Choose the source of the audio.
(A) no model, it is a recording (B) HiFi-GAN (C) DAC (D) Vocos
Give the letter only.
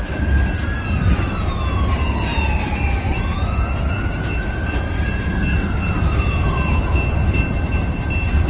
A